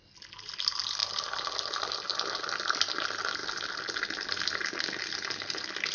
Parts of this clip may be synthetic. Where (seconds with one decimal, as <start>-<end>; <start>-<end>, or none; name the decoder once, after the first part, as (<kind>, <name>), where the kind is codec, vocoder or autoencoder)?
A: none